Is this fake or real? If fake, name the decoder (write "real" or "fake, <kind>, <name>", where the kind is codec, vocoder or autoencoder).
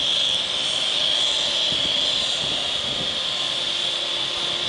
real